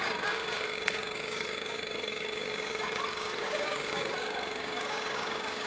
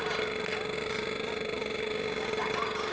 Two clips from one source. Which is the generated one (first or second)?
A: first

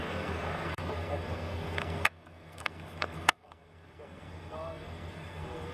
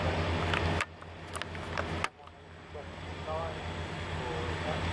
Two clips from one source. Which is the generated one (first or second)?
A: first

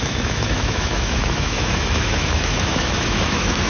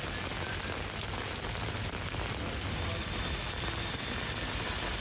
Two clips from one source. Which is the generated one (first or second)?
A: first